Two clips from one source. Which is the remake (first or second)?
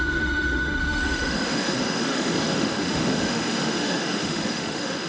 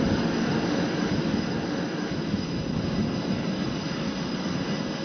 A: first